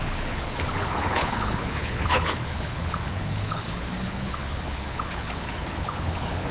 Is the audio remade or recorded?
remade